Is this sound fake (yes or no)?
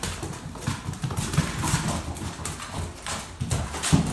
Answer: no